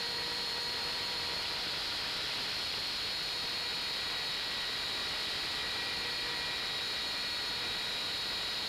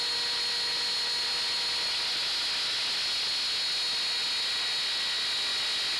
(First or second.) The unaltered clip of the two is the second